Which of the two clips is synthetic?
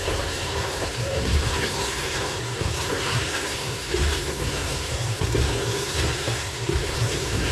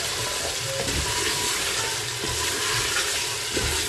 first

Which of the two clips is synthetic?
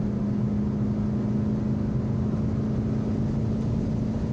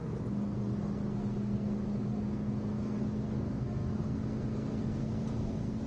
second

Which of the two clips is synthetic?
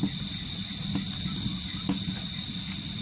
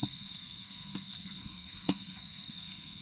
second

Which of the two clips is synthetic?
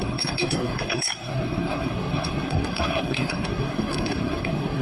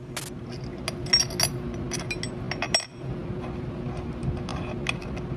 first